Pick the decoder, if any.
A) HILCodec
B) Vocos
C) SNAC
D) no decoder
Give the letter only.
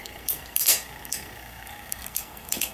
C